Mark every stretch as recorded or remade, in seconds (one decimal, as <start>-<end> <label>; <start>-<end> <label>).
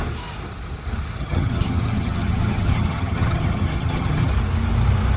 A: 0.0-1.2 recorded; 1.2-4.3 remade; 4.3-5.2 recorded